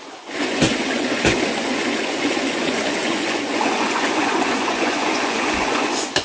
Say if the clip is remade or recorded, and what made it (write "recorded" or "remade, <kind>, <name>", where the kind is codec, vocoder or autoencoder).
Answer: remade, vocoder, Vocos